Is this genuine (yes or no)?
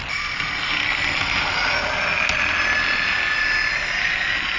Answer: yes